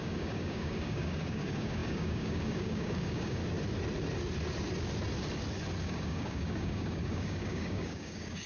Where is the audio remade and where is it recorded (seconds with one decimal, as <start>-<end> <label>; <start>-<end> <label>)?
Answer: 0.0-3.4 remade; 3.4-5.8 recorded; 5.8-8.5 remade